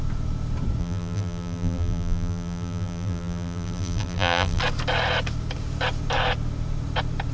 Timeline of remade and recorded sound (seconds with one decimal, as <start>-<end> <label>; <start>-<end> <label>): 0.0-0.8 recorded; 0.8-4.6 remade; 4.6-7.3 recorded